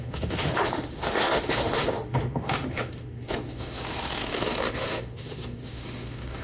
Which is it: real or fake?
fake